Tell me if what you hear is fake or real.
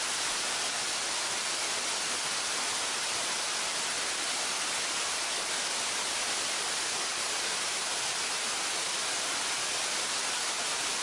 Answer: real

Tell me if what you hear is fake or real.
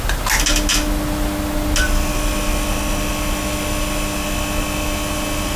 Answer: real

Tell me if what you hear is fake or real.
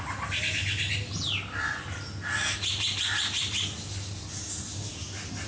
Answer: real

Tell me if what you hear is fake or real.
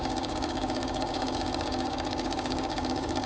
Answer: fake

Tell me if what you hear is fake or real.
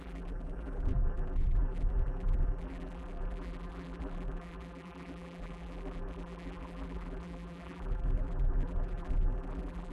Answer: fake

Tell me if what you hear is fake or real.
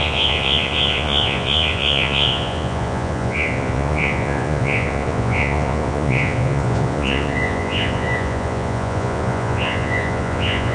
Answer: fake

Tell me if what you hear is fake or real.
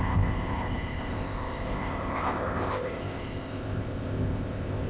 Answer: fake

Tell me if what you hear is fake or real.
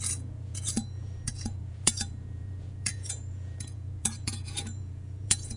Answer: fake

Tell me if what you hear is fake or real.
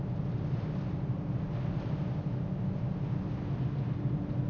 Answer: real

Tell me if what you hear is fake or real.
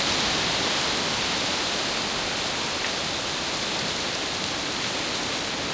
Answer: real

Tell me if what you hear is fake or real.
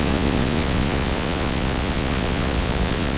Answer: fake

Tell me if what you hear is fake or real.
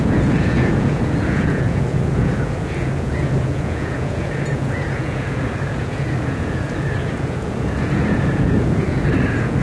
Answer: fake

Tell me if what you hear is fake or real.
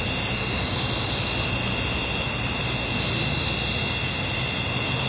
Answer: real